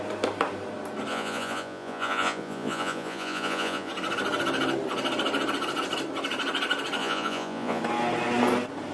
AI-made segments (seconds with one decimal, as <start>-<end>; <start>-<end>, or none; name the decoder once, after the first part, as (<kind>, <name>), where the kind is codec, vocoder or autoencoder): 1.1-3.9 (vocoder, Vocos); 7.0-7.8